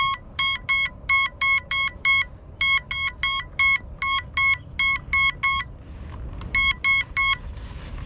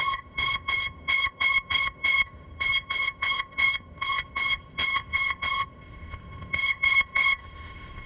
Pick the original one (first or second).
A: first